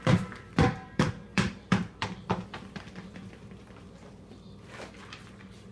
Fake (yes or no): yes